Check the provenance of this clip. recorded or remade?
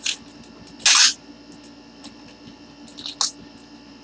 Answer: recorded